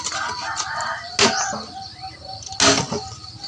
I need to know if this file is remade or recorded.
recorded